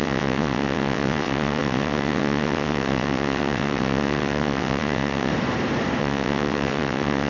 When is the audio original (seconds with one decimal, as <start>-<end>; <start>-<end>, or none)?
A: 5.3-6.0